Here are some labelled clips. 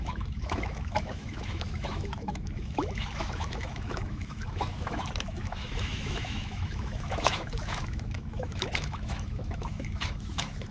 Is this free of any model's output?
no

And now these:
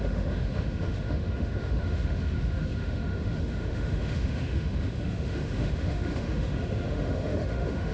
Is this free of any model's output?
no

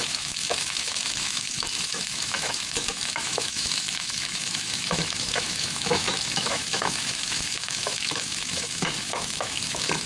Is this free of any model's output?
no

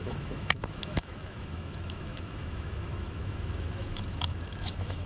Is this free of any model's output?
no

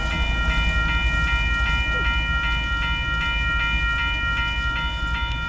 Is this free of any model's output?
yes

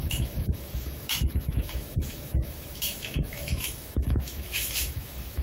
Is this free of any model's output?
no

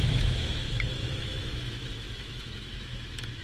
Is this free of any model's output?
no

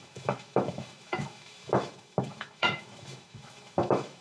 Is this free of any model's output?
no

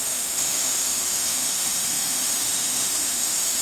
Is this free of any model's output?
no